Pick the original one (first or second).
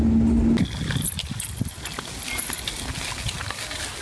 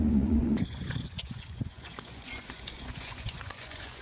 first